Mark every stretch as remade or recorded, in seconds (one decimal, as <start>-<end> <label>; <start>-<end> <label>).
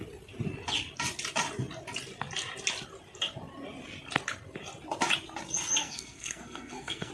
0.0-5.8 recorded; 5.8-7.1 remade